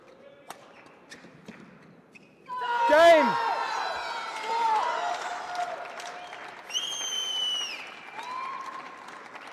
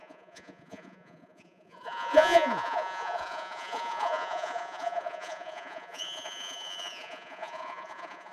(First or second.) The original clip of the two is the first